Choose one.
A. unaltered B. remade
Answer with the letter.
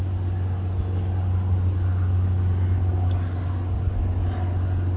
A